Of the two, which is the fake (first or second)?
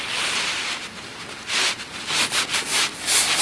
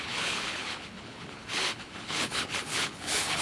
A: second